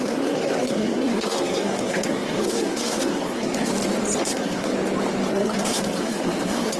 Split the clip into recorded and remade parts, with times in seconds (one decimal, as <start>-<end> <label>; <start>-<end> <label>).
0.0-3.7 remade; 3.7-4.2 recorded; 4.2-4.7 remade; 4.7-5.3 recorded; 5.3-6.8 remade